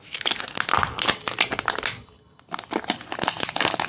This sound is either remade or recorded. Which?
recorded